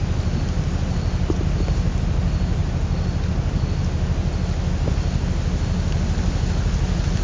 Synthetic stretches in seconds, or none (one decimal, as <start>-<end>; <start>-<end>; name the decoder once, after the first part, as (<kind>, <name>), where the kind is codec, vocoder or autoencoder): none